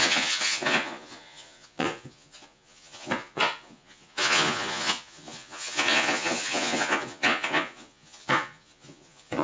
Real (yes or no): no